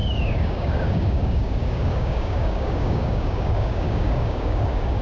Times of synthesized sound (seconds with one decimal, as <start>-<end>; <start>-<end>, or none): 0.0-5.0